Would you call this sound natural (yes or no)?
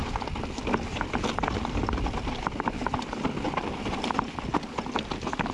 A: yes